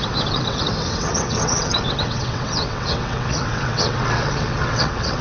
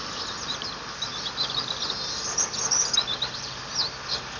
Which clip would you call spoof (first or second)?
first